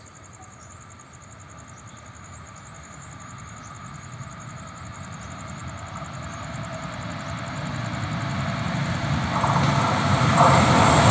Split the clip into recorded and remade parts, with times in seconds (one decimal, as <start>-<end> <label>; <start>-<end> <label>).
0.0-11.1 recorded